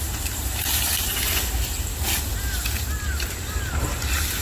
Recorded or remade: recorded